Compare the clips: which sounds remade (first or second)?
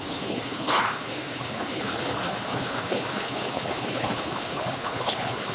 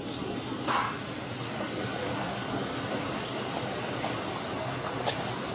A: first